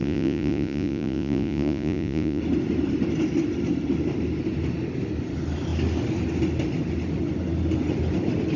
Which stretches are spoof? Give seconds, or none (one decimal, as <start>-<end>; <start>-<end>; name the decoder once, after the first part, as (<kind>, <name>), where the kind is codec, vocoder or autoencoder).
0.0-2.4 (vocoder, Vocos)